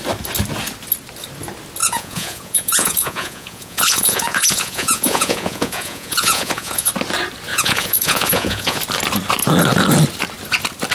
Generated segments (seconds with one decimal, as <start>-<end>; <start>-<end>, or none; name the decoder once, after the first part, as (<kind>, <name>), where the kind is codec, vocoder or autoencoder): 1.8-6.9 (vocoder, Vocos); 7.5-8.8